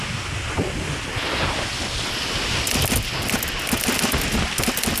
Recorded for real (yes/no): yes